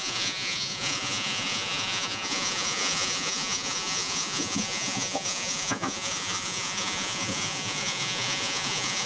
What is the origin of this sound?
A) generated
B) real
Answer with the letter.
A